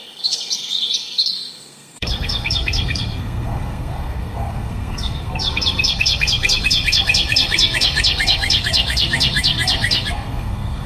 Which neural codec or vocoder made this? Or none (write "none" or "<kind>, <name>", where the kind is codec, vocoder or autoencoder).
codec, SNAC